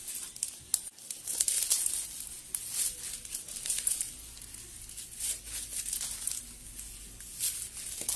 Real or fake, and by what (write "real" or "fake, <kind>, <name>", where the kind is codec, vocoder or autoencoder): real